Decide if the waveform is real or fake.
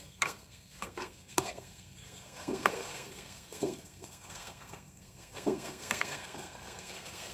fake